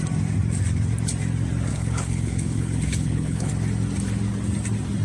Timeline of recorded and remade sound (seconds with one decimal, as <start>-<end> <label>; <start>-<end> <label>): 0.0-1.7 recorded; 1.7-3.5 remade; 3.5-5.0 recorded

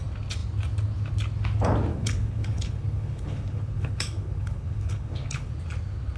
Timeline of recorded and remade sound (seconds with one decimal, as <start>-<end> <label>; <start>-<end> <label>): 0.0-1.9 recorded; 1.9-5.5 remade; 5.5-6.2 recorded

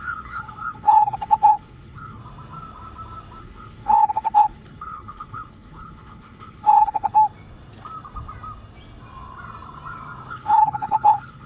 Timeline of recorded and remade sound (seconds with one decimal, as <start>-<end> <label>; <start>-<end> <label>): 0.0-2.2 remade; 2.2-3.4 recorded; 3.4-7.1 remade; 7.1-10.3 recorded; 10.3-11.5 remade

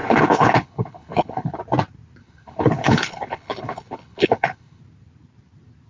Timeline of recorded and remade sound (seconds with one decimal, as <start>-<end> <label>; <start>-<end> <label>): 0.0-1.6 remade; 1.6-2.2 recorded; 2.2-4.8 remade; 4.8-5.9 recorded

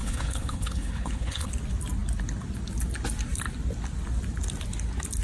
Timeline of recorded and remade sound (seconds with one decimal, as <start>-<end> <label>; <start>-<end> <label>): 0.0-1.5 remade; 1.5-5.2 recorded